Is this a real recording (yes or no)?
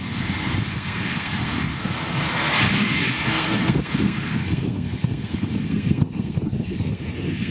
no